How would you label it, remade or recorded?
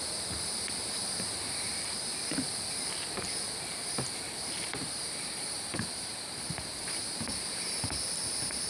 remade